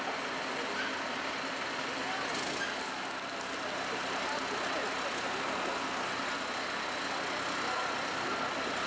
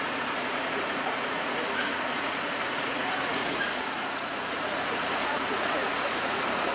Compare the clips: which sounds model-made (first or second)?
second